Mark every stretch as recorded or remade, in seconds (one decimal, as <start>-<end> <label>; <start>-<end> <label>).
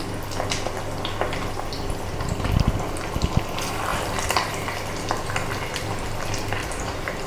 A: 0.0-3.9 recorded; 3.9-4.5 remade; 4.5-6.6 recorded; 6.6-7.3 remade